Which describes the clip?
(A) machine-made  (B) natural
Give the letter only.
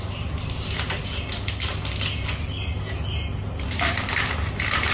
B